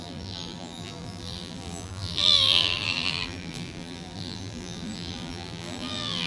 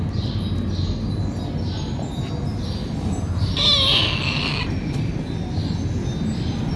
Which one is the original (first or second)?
second